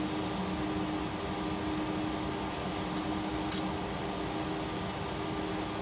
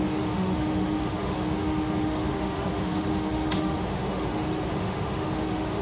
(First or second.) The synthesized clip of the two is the second